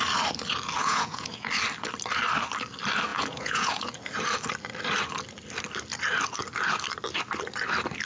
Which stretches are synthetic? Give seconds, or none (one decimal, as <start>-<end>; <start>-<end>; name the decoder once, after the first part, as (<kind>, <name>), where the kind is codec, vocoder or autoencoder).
0.8-1.5 (vocoder, Vocos); 3.1-3.8